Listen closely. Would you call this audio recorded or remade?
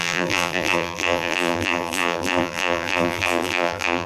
remade